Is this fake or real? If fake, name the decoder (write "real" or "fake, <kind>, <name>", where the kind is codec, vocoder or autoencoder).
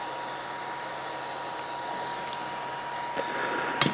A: real